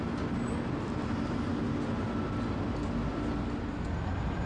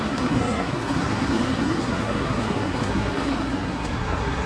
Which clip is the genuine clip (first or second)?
first